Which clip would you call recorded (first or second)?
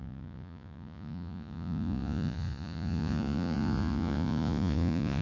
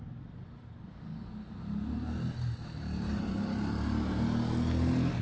second